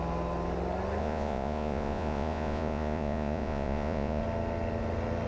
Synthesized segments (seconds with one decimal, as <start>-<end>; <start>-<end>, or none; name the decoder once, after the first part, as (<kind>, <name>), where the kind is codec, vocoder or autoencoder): 1.0-4.2 (vocoder, Vocos)

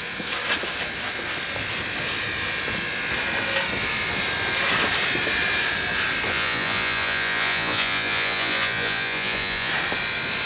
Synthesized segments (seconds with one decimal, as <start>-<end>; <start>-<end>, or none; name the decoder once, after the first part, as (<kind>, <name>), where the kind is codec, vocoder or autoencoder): 6.3-9.7 (vocoder, Vocos)

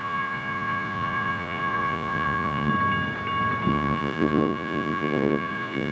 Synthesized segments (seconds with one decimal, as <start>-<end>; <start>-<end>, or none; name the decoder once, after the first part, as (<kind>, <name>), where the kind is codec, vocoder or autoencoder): 0.0-2.7 (vocoder, Vocos); 3.7-5.9

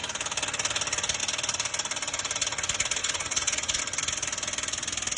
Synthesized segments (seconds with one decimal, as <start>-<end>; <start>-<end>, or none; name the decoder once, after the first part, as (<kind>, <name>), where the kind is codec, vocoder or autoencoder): 3.0-3.8 (vocoder, Vocos)

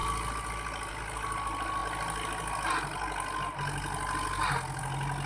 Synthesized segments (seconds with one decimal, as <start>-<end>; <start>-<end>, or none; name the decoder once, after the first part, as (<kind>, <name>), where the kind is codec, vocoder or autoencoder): none

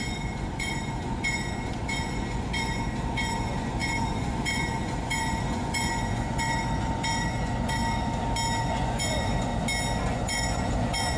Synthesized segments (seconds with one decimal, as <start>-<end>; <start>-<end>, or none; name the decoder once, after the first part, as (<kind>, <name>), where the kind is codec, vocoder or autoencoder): 0.0-7.8 (vocoder, Vocos); 8.6-9.5; 10.0-11.2